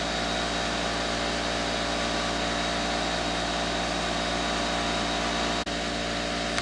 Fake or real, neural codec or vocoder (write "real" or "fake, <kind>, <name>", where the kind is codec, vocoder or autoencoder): real